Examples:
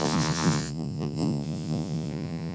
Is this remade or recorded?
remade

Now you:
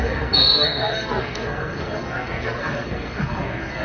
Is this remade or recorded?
remade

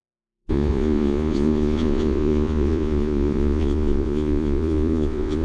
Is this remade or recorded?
remade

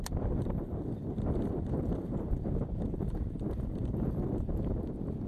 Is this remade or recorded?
remade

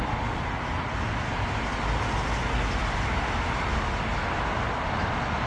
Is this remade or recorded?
recorded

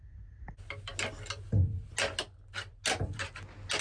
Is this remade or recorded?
recorded